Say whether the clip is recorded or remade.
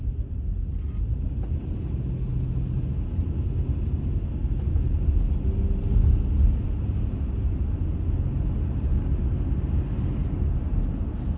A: recorded